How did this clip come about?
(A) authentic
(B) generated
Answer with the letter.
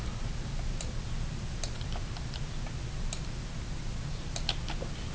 A